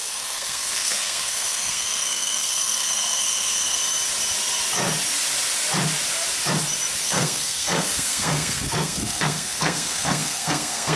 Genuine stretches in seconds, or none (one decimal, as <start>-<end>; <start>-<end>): 3.8-7.0